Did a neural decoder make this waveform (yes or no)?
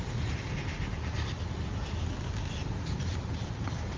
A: no